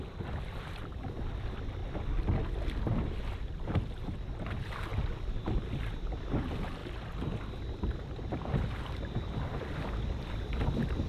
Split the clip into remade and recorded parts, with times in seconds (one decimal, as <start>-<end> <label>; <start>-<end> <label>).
0.0-1.8 remade; 1.8-3.2 recorded; 3.2-11.1 remade

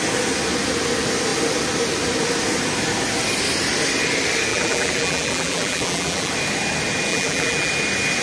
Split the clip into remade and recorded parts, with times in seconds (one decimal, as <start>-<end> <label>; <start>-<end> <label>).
0.0-4.5 recorded; 4.5-6.3 remade; 6.3-7.1 recorded; 7.1-7.7 remade; 7.7-8.2 recorded

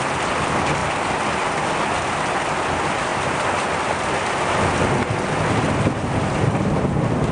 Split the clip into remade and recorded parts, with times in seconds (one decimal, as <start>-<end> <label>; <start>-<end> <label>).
0.0-0.8 recorded; 0.8-1.6 remade; 1.6-3.1 recorded; 3.1-4.9 remade; 4.9-7.3 recorded

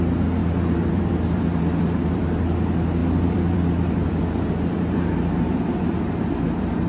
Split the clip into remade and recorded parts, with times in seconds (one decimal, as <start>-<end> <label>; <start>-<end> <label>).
0.0-0.4 recorded; 0.4-2.2 remade; 2.2-3.0 recorded; 3.0-4.1 remade; 4.1-6.9 recorded

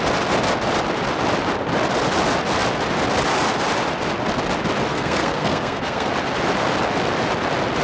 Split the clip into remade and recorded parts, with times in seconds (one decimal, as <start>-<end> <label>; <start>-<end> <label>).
0.0-4.9 recorded; 4.9-6.1 remade; 6.1-7.8 recorded

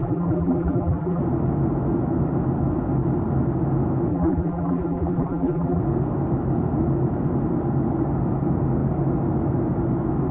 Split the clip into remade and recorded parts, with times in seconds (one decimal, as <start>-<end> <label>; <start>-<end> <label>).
0.0-1.2 remade; 1.2-4.1 recorded; 4.1-5.8 remade; 5.8-10.3 recorded

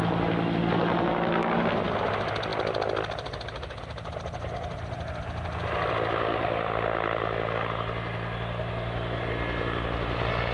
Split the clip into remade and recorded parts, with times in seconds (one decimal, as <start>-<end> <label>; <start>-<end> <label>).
0.0-10.5 recorded

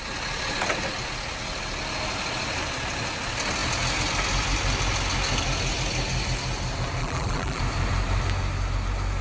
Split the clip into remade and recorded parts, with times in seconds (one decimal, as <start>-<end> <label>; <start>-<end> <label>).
0.0-7.0 recorded; 7.0-7.6 remade; 7.6-9.2 recorded